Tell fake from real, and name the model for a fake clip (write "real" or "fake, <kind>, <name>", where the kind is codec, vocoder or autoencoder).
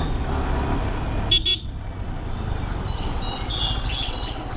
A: real